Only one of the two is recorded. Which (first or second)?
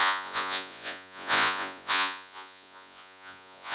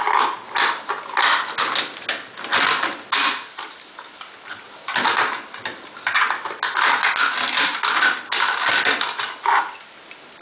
second